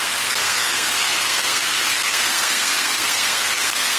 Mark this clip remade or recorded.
remade